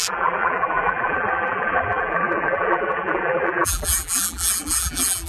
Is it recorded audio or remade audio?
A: remade